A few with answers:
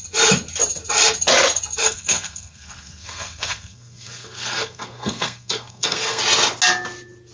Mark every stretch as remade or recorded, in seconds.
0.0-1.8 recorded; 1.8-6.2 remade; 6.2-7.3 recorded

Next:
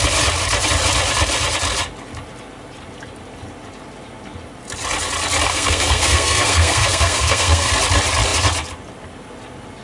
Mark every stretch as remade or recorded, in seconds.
0.0-5.5 recorded; 5.5-7.7 remade; 7.7-9.8 recorded

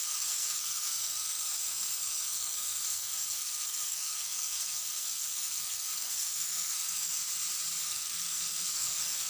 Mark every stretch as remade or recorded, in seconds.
0.0-7.2 remade; 7.2-7.8 recorded; 7.8-9.3 remade